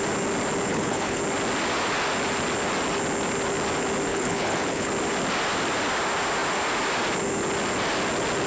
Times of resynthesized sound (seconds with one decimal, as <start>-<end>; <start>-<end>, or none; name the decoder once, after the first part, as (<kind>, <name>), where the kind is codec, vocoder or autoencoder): 0.7-1.2 (codec, HILCodec); 4.1-4.9